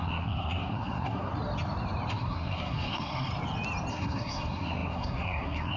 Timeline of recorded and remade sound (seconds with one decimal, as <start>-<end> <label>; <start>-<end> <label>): 0.0-1.3 remade; 1.3-2.1 recorded; 2.1-3.3 remade; 3.3-3.9 recorded; 3.9-5.8 remade